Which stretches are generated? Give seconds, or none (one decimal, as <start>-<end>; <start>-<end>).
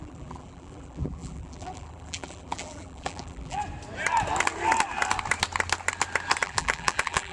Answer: 0.0-3.6; 6.4-7.3